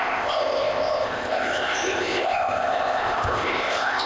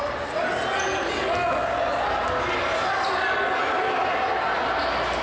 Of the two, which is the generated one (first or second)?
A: first